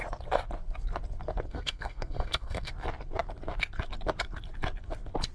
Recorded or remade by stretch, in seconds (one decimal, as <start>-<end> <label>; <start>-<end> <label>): 0.0-1.5 recorded; 1.5-2.7 remade; 2.7-5.3 recorded